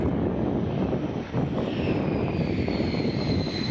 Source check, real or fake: real